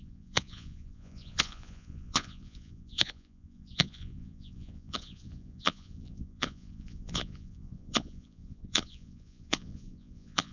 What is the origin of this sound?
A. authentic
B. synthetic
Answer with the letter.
B